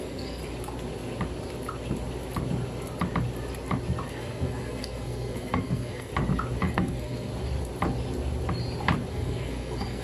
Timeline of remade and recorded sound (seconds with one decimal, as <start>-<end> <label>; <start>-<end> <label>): 0.0-0.4 remade; 0.4-4.1 recorded; 4.1-6.1 remade; 6.1-6.6 recorded; 6.6-7.3 remade; 7.3-9.1 recorded; 9.1-10.0 remade